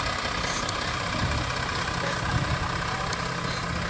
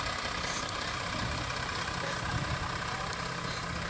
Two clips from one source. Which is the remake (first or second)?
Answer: second